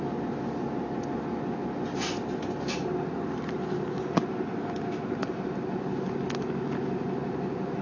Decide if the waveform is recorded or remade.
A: recorded